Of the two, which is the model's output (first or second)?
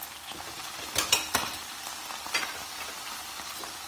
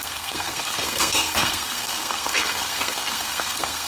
second